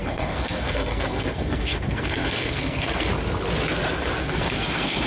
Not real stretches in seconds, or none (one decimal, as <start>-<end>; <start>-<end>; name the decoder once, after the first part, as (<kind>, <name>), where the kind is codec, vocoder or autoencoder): 0.0-3.1 (codec, SNAC); 4.2-5.1